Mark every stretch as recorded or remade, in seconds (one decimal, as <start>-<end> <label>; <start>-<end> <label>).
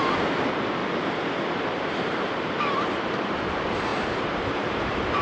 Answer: 0.0-0.8 remade; 0.8-2.0 recorded; 2.0-5.2 remade